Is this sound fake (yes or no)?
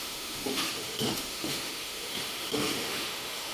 yes